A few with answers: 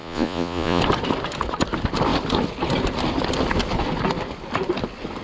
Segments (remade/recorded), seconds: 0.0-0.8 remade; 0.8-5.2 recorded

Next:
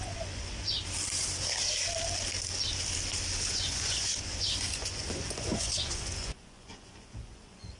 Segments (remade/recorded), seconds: 0.0-0.8 remade; 0.8-3.5 recorded; 3.5-7.8 remade

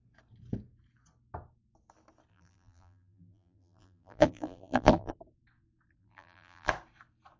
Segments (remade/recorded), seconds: 0.0-2.3 recorded; 2.3-5.1 remade; 5.1-6.0 recorded; 6.0-6.7 remade; 6.7-7.4 recorded

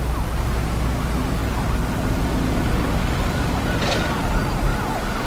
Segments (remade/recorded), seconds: 0.0-5.3 recorded

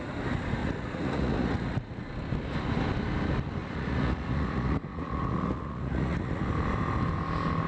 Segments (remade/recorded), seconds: 0.0-0.6 recorded; 0.6-2.1 remade; 2.1-3.6 recorded; 3.6-6.5 remade; 6.5-7.7 recorded

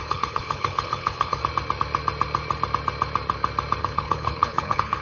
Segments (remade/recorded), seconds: 0.0-1.4 remade; 1.4-3.8 recorded; 3.8-5.0 remade